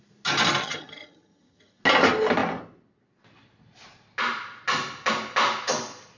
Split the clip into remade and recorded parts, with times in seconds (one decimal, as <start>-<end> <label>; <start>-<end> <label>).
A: 0.0-0.6 recorded; 0.6-1.8 remade; 1.8-6.2 recorded